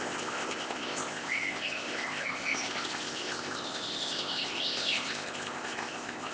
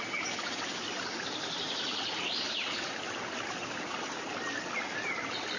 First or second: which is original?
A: second